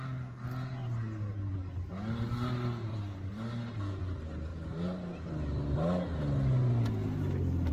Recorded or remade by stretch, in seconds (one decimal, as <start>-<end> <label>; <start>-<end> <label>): 0.0-2.9 recorded; 2.9-3.8 remade; 3.8-4.5 recorded; 4.5-5.3 remade; 5.3-7.7 recorded